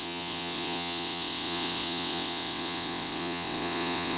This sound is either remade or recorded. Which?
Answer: remade